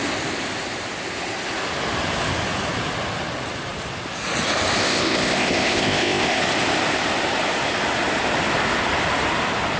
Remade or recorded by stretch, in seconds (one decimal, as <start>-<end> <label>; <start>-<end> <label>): 0.0-4.8 recorded; 4.8-6.4 remade; 6.4-9.8 recorded